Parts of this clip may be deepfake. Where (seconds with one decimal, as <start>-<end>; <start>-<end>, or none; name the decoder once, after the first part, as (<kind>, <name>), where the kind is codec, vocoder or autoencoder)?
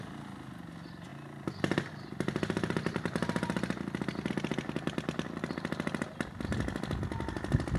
none